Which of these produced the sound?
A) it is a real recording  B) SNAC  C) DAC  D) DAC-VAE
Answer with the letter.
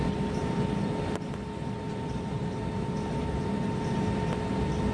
A